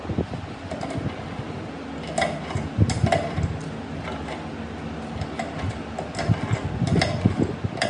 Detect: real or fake real